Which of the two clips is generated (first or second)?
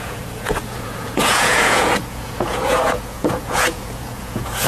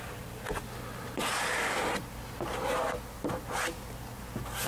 first